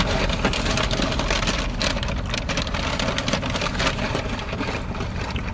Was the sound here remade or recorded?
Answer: recorded